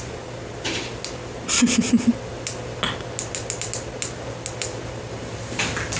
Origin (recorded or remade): recorded